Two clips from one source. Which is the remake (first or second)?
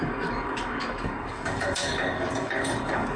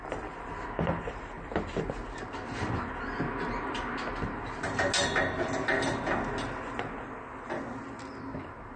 first